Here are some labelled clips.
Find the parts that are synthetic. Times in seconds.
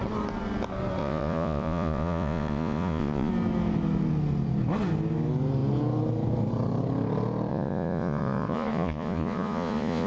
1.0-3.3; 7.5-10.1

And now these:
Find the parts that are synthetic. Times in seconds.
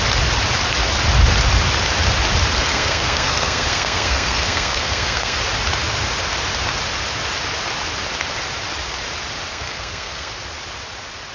2.7-5.4; 9.5-10.3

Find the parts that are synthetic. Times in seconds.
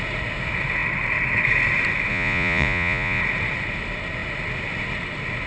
2.1-3.2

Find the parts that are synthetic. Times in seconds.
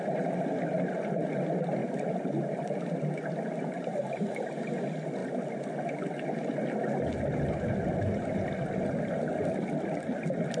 none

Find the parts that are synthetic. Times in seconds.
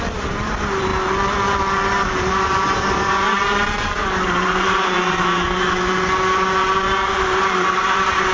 0.0-0.9; 2.0-8.3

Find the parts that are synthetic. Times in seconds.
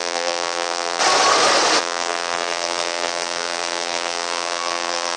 0.0-1.0; 1.8-5.2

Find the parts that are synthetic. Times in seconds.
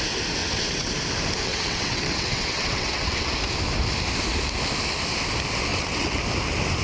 0.4-0.9; 1.5-3.3; 5.7-6.2